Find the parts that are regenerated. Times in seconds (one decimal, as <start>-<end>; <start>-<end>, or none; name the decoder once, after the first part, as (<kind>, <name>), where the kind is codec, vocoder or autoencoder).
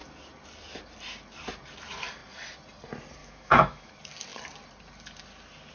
3.2-3.9 (autoencoder, DAC-VAE)